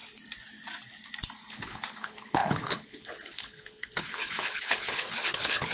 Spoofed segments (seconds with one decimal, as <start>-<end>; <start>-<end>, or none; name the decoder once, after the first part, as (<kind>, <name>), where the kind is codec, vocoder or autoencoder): 1.5-5.7 (codec, HILCodec)